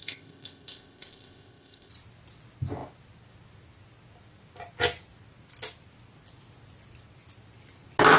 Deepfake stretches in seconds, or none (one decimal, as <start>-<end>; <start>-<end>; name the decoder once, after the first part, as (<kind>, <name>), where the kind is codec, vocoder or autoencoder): 0.0-1.9 (codec, ZipCodec)